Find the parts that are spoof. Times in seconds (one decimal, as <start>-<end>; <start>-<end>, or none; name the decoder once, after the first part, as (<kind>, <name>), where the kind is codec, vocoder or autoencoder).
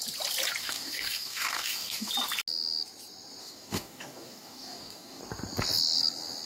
0.6-2.1 (codec, DAC); 3.4-5.2